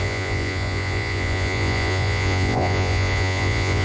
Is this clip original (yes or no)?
no